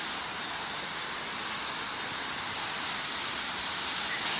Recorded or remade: recorded